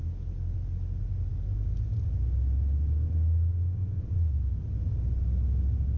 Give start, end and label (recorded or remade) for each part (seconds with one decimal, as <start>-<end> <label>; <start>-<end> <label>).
0.0-6.0 recorded